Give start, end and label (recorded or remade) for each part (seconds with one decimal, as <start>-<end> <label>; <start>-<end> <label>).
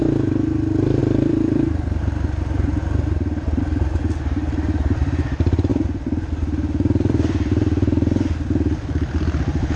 0.0-1.0 recorded; 1.0-2.0 remade; 2.0-5.7 recorded; 5.7-9.4 remade; 9.4-9.8 recorded